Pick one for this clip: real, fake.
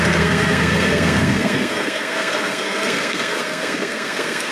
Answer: fake